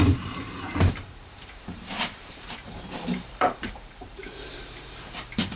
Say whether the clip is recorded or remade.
remade